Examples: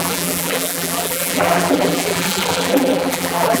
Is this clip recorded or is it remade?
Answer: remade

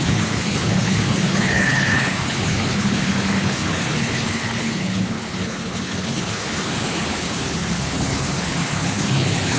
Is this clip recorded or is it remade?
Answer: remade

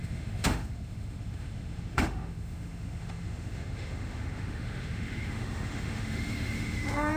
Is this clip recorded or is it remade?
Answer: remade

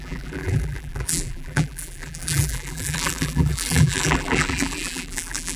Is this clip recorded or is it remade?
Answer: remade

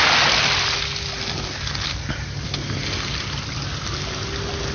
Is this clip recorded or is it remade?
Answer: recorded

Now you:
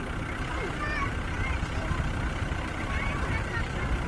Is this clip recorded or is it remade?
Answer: recorded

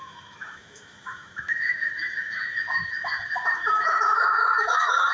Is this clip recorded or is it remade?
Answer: remade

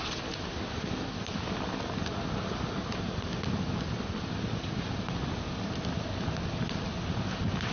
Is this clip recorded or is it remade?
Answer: recorded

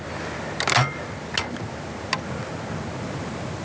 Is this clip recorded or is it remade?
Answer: recorded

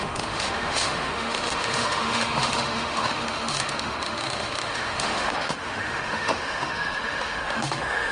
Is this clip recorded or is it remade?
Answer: remade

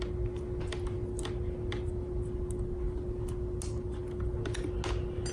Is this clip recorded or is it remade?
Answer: recorded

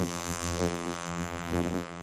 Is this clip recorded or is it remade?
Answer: remade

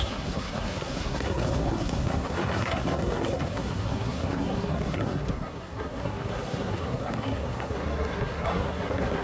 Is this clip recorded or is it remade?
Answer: remade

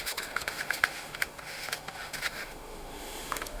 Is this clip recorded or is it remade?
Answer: remade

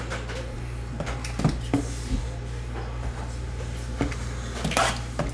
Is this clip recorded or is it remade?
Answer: recorded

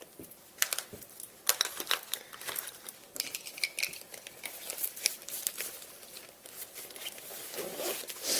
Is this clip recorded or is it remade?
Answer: remade